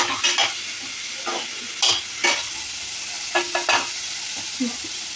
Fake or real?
real